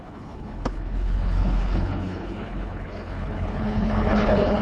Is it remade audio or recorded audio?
remade